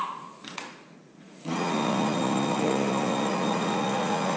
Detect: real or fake fake